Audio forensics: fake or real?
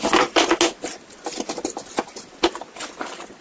real